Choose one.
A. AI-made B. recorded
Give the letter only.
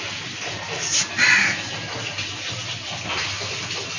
B